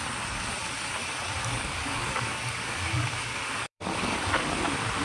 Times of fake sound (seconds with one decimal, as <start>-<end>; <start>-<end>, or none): 1.4-4.4

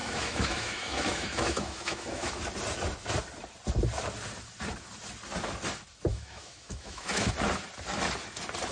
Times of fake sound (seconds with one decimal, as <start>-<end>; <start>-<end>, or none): 0.0-2.4; 6.1-7.3

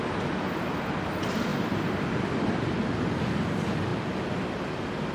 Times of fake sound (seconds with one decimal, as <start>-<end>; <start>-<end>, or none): 0.0-3.9

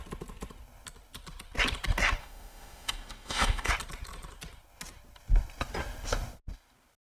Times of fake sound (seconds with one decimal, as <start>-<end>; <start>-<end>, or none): 2.2-3.7

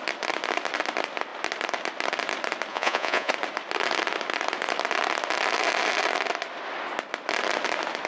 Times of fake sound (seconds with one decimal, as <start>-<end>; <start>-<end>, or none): 2.7-3.3

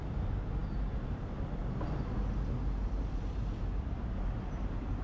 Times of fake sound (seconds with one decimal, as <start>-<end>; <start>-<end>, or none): none

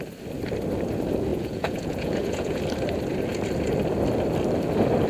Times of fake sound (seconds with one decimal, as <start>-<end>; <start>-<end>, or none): 1.3-2.6

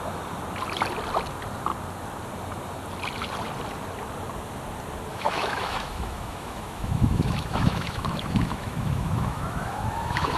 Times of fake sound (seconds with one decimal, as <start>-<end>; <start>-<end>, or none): 5.1-10.4